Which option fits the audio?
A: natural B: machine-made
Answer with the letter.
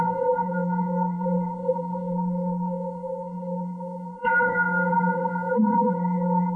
B